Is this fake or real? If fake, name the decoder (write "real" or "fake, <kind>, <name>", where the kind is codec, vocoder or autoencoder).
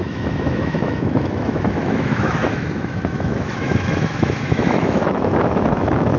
fake, autoencoder, DAC-VAE